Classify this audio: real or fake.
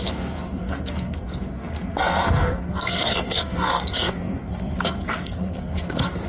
fake